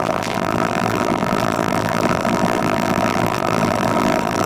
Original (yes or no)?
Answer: no